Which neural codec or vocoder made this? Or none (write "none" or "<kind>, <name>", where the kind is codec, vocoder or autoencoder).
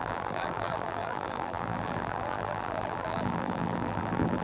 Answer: vocoder, BigVGAN v2